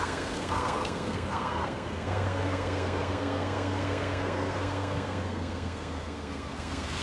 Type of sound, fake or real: fake